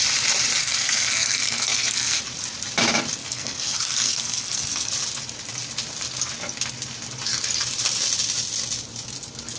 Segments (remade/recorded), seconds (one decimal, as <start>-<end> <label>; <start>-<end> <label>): 0.0-0.6 recorded; 0.6-2.2 remade; 2.2-3.2 recorded; 3.2-4.9 remade; 4.9-9.6 recorded